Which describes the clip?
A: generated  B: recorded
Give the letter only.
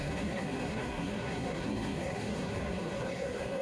A